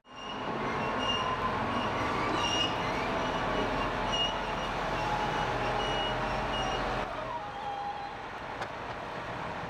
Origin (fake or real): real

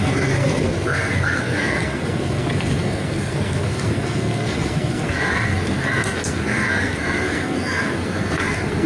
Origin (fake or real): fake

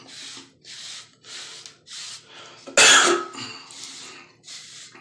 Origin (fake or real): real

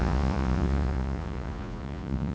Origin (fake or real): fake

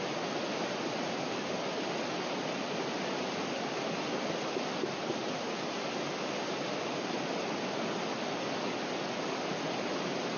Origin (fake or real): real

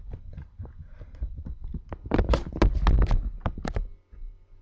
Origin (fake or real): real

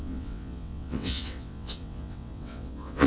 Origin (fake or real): fake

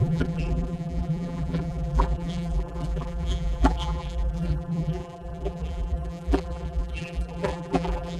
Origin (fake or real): fake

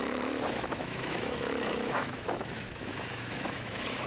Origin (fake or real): fake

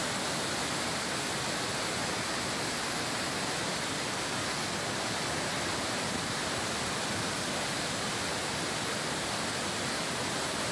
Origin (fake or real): real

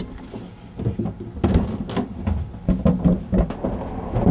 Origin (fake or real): real